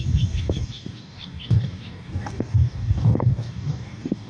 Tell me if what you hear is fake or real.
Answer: fake